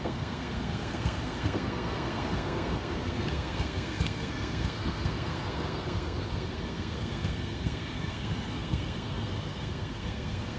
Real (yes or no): no